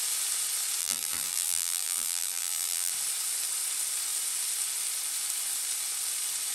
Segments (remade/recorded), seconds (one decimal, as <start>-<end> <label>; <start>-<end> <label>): 0.0-0.8 recorded; 0.8-2.9 remade; 2.9-6.5 recorded